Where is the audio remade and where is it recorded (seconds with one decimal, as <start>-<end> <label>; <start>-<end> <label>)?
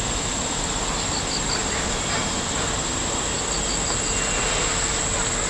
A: 0.0-5.5 recorded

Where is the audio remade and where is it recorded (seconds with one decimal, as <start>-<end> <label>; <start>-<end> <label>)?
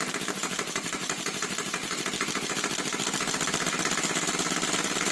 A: 0.0-1.8 remade; 1.8-5.1 recorded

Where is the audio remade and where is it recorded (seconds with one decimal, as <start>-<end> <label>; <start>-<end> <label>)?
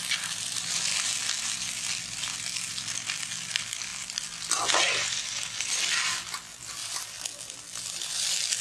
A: 0.0-0.9 recorded; 0.9-3.5 remade; 3.5-6.8 recorded; 6.8-7.6 remade; 7.6-8.6 recorded